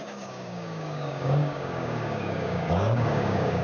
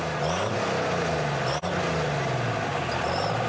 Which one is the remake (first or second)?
first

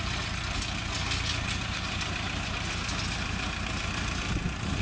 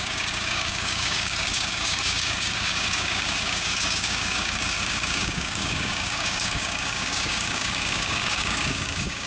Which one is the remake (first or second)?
second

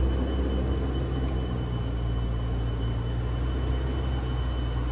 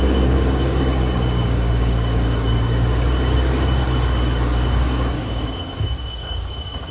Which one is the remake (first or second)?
second